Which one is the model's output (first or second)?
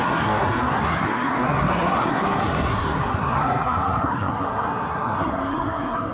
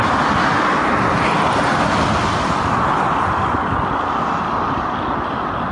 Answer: first